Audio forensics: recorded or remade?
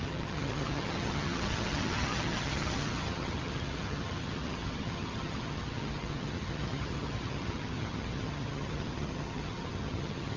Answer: remade